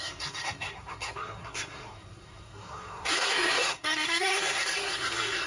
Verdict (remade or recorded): remade